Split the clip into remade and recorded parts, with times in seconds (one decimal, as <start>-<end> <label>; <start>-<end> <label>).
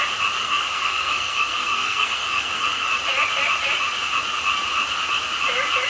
0.0-0.4 recorded; 0.4-2.9 remade; 2.9-5.9 recorded